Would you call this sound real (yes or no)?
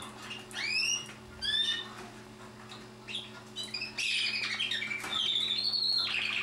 yes